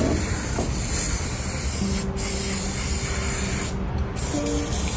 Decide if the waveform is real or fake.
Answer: real